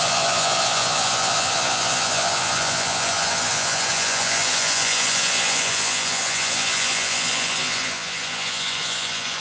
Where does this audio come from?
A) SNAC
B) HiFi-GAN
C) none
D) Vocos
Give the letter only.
D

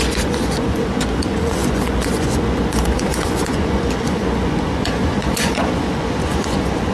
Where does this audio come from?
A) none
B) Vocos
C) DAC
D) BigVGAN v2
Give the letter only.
B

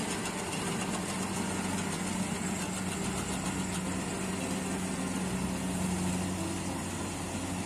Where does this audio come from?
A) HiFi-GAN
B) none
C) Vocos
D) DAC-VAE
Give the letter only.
B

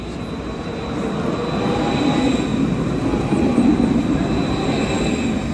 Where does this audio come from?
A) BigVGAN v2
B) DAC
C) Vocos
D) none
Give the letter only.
D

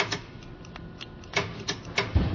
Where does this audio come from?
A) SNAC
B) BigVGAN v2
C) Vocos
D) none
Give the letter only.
D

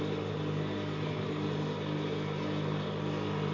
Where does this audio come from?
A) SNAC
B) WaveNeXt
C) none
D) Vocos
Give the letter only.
C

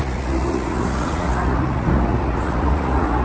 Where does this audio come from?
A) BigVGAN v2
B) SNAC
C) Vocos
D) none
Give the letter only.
C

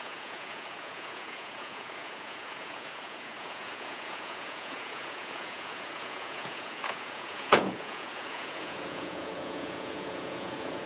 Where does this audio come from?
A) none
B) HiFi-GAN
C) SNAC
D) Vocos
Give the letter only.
D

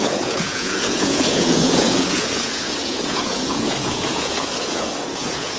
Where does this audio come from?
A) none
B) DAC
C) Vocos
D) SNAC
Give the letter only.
C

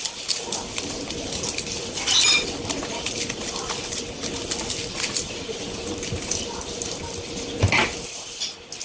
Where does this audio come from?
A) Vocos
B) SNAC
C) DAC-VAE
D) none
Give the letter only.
D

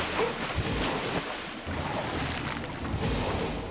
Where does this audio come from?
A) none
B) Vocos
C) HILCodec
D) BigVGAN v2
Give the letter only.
A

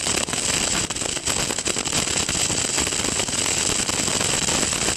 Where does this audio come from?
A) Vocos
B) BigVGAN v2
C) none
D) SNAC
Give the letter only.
C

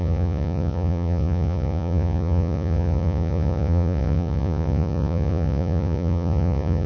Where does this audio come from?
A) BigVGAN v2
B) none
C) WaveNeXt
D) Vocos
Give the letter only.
D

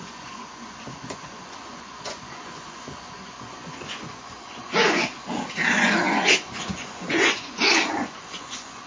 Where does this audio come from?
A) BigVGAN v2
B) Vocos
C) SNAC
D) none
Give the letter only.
B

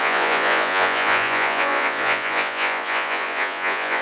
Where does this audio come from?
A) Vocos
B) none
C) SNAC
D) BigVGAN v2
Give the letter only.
A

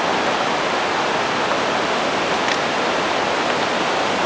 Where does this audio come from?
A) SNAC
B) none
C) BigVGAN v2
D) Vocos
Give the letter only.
B